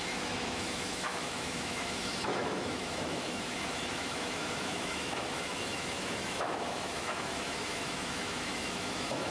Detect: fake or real fake